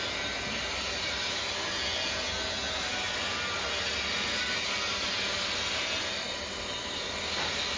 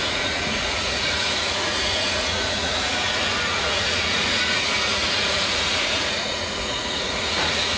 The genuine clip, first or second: first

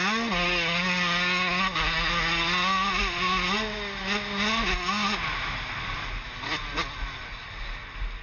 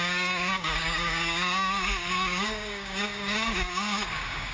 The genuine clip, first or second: first